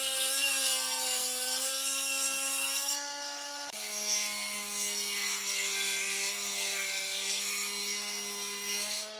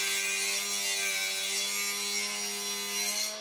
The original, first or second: second